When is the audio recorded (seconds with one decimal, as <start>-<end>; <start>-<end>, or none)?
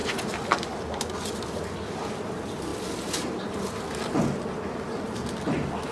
0.0-5.9